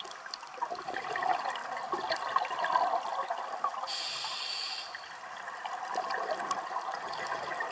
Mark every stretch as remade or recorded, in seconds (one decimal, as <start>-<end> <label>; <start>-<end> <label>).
0.0-7.7 recorded